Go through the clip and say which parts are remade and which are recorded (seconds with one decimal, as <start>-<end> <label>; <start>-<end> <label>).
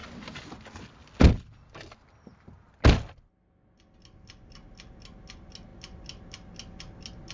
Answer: 0.0-7.3 recorded